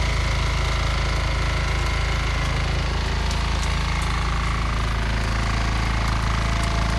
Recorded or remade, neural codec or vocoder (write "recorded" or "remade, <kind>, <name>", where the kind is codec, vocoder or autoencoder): recorded